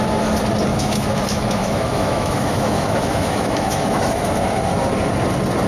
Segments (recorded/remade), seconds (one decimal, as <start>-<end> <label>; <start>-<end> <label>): 0.0-0.7 recorded; 0.7-4.0 remade; 4.0-5.7 recorded